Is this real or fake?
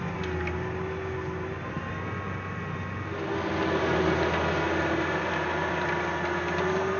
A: real